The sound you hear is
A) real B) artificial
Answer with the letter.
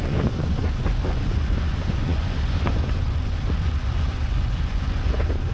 B